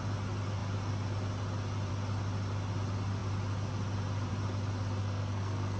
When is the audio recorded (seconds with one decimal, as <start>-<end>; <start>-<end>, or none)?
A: 0.0-5.0

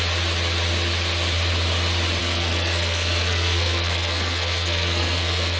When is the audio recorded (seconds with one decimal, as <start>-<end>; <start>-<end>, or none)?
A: 0.0-2.2